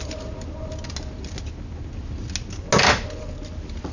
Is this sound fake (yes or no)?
no